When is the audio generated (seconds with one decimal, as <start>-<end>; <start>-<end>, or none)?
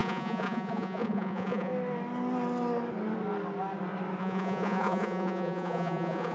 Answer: 0.0-1.7; 4.2-6.3